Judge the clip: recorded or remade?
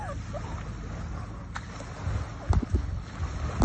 recorded